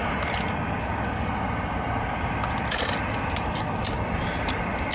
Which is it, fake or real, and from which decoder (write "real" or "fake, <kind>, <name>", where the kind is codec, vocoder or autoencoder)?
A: real